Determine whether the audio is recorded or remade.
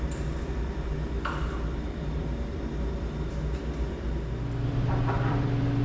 remade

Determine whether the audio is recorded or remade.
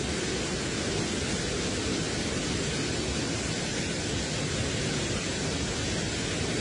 recorded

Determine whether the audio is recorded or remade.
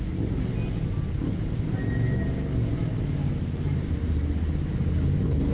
recorded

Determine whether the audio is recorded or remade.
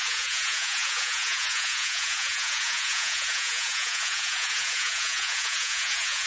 remade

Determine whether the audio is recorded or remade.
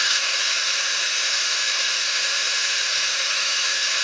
remade